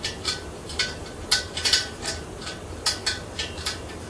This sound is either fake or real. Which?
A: fake